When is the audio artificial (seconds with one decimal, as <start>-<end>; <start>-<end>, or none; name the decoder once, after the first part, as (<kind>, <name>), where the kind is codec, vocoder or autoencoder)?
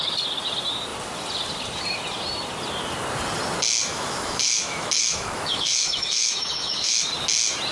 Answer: 3.9-7.0 (autoencoder, DAC-VAE)